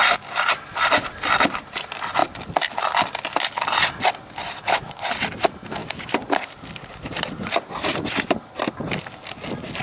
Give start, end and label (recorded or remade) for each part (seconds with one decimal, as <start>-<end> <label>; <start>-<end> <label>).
0.0-5.8 recorded; 5.8-8.5 remade; 8.5-9.8 recorded